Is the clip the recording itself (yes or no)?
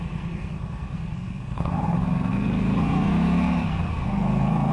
no